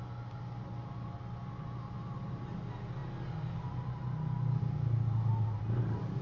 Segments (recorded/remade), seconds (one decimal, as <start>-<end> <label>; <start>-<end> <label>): 0.0-6.2 recorded

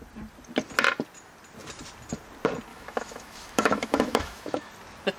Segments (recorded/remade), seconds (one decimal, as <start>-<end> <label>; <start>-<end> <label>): 0.0-2.7 recorded; 2.7-4.7 remade; 4.7-5.2 recorded

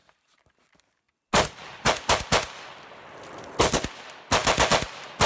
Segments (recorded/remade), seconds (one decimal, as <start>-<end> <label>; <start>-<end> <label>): 0.0-5.3 recorded

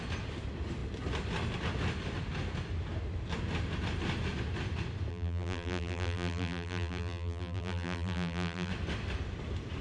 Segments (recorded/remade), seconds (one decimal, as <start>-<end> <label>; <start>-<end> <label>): 0.0-5.1 recorded; 5.1-8.7 remade; 8.7-9.8 recorded

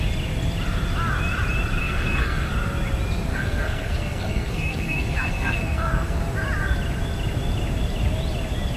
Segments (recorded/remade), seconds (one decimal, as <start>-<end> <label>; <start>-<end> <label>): 0.0-1.8 recorded; 1.8-2.5 remade; 2.5-3.3 recorded; 3.3-6.2 remade; 6.2-8.8 recorded

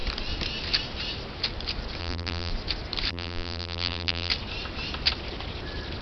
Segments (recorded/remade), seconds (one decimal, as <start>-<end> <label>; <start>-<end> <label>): 0.0-2.0 recorded; 2.0-2.5 remade; 2.5-3.1 recorded; 3.1-4.3 remade; 4.3-6.0 recorded

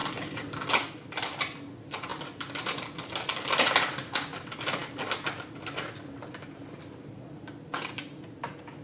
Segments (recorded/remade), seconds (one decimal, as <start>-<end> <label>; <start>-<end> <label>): 0.0-8.8 recorded

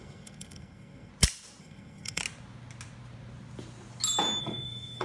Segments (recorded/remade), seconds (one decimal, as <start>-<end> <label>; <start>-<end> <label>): 0.0-1.1 remade; 1.1-1.6 recorded; 1.6-2.2 remade; 2.2-4.4 recorded; 4.4-5.0 remade